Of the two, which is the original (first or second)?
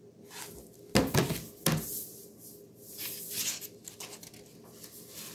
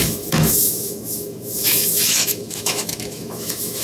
first